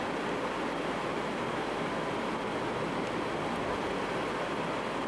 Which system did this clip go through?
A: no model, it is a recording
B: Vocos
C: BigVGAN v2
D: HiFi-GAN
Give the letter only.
C